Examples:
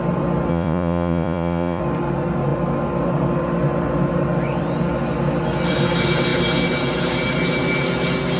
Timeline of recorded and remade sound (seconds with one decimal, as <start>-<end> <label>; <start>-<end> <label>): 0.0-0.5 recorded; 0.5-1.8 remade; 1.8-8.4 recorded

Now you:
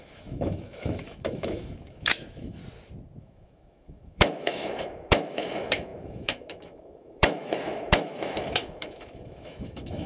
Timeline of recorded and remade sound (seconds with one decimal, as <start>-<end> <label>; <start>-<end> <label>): 0.0-2.6 remade; 2.6-3.2 recorded; 3.2-10.1 remade

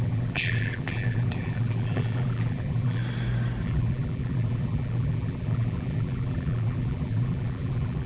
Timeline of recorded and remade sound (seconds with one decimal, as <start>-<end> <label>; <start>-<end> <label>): 0.0-3.0 remade; 3.0-3.6 recorded; 3.6-8.1 remade

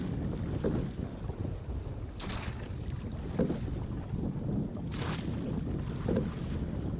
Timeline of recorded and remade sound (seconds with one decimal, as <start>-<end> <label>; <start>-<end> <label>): 0.0-7.0 recorded

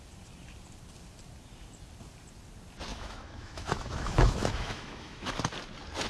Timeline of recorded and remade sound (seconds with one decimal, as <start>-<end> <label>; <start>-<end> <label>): 0.0-2.9 recorded; 2.9-5.3 remade; 5.3-6.1 recorded